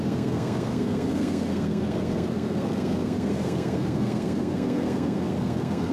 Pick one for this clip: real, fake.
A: fake